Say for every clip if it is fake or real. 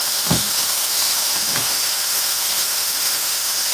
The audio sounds fake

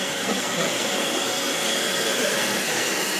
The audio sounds fake